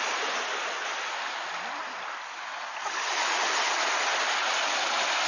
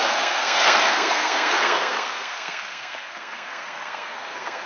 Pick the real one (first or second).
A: first